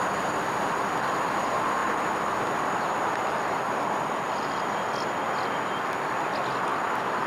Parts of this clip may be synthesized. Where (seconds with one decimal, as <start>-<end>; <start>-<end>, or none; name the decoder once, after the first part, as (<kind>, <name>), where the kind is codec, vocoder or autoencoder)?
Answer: 1.8-4.2 (vocoder, BigVGAN v2)